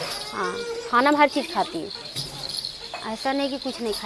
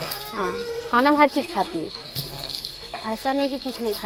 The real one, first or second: first